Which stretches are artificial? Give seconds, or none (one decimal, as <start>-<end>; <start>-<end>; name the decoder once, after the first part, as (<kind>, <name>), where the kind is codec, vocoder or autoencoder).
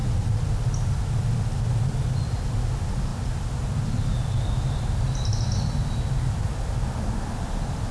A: none